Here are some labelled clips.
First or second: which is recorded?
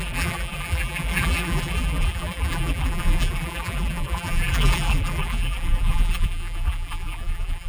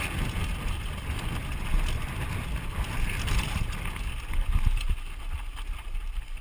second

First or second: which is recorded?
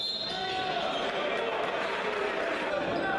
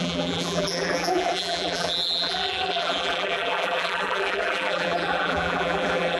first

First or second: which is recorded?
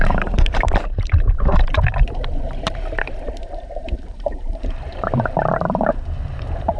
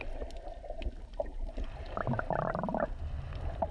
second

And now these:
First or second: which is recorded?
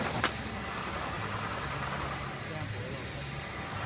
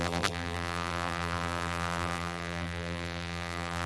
first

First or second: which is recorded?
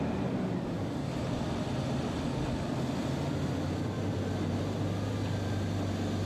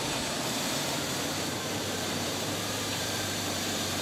first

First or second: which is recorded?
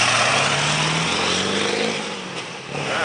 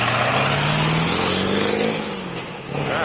second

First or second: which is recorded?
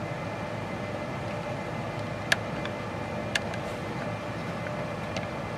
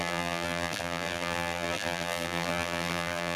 first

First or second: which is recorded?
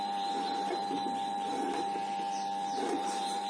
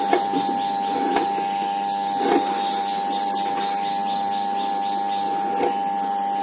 second